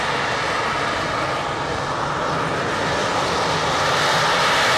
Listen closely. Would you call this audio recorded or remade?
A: recorded